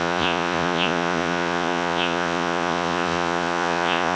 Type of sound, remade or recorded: remade